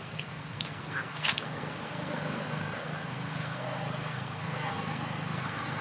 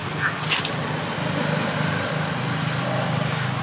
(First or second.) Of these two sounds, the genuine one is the second